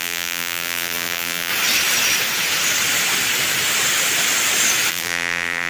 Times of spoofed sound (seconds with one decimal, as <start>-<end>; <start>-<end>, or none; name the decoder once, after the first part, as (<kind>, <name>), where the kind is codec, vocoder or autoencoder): 0.0-1.5 (vocoder, BigVGAN v2); 4.9-5.7